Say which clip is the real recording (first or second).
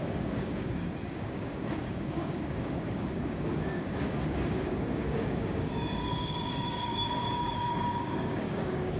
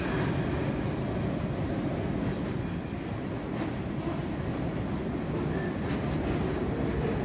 second